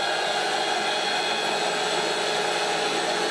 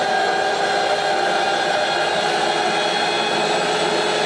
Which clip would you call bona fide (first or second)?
second